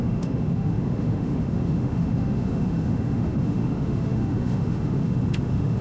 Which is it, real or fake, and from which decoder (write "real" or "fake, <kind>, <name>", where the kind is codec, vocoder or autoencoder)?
fake, autoencoder, DAC-VAE